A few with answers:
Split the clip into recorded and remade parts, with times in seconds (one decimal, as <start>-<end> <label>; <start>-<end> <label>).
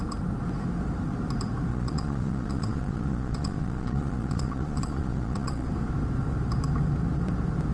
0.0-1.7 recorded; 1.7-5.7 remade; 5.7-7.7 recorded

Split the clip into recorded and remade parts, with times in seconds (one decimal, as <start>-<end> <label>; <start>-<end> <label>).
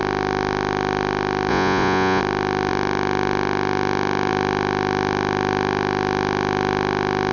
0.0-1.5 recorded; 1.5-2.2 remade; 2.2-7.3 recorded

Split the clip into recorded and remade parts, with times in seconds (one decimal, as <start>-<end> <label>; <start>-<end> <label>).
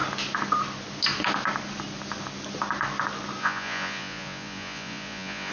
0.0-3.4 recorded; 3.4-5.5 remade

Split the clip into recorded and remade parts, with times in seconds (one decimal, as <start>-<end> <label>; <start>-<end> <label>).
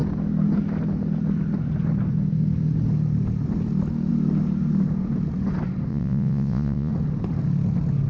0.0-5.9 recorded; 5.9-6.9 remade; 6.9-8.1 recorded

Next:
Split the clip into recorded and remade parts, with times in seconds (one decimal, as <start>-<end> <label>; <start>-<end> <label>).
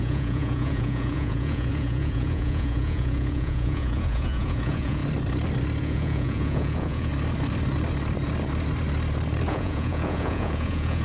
0.0-5.0 remade; 5.0-5.8 recorded; 5.8-7.1 remade; 7.1-9.5 recorded; 9.5-11.0 remade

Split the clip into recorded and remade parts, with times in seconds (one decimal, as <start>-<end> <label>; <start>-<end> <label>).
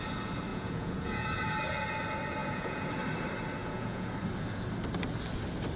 0.0-0.5 recorded; 0.5-1.5 remade; 1.5-2.4 recorded; 2.4-2.9 remade; 2.9-3.6 recorded; 3.6-4.1 remade; 4.1-5.8 recorded